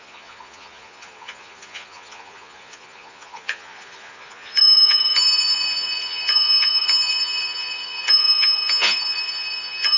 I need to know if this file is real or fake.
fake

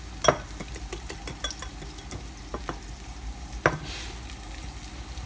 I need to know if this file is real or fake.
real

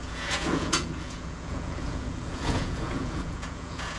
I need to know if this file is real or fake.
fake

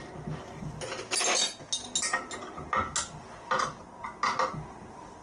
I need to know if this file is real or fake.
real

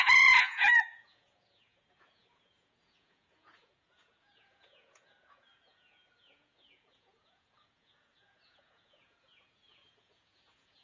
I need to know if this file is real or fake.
fake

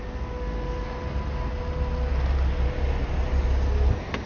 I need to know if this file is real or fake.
real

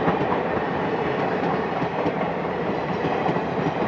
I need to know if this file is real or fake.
real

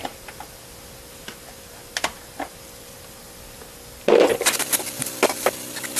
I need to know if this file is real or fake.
real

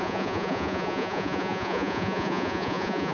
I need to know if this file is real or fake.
fake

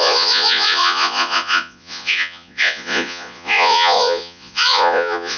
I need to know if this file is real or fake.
fake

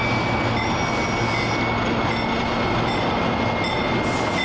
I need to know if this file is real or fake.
real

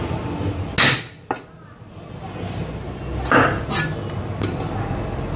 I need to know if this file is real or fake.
real